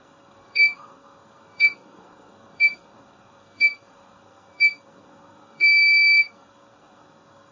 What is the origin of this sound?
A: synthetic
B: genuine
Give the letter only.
A